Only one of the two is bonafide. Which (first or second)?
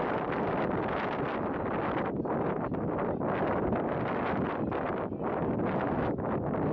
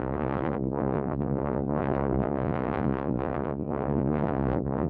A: first